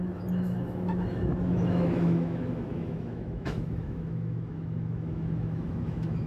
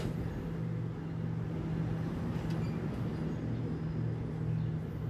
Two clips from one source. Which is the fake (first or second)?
first